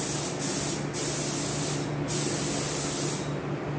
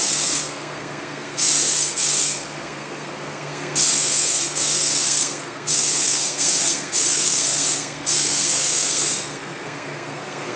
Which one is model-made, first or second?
second